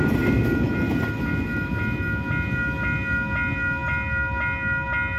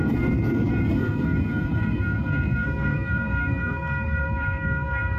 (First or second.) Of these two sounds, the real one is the first